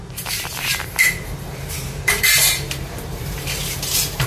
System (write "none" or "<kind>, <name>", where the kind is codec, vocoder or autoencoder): vocoder, BigVGAN v2